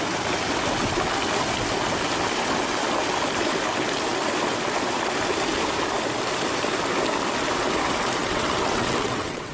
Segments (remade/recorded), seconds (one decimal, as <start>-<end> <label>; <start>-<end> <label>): 0.0-8.2 recorded; 8.2-9.5 remade